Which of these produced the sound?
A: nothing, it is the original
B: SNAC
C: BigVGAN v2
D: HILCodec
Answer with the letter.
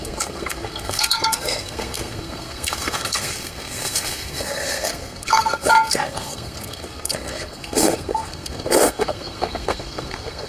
B